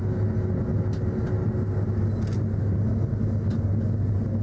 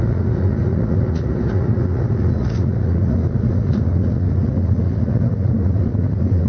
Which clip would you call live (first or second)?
first